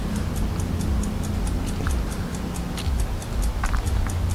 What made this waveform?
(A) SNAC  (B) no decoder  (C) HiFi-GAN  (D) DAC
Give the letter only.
B